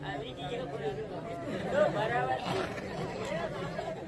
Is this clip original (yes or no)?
yes